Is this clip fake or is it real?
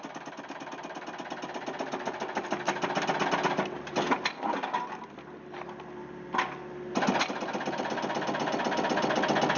real